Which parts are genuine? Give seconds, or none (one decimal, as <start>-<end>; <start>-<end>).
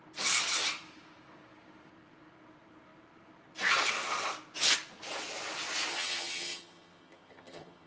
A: 0.0-5.9